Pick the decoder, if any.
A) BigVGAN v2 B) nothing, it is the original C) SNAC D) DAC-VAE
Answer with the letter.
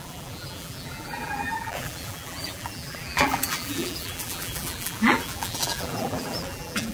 A